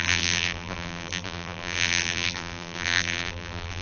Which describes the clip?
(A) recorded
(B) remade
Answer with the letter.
B